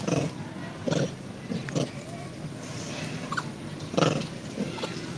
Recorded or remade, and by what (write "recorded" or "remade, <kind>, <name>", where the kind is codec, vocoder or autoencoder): recorded